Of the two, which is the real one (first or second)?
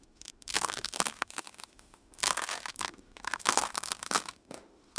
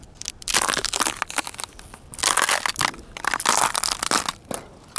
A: second